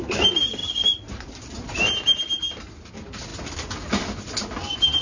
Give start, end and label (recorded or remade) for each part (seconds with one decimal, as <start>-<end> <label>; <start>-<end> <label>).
0.0-5.0 recorded